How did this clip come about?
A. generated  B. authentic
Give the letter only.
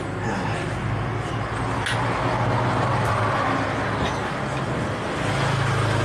B